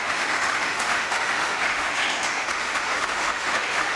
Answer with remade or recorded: remade